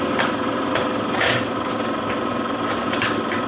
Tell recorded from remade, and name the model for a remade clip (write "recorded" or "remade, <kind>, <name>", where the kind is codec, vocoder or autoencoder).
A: remade, vocoder, BigVGAN v2